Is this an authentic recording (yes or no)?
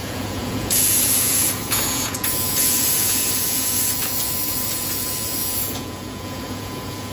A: no